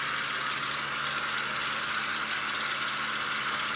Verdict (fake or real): real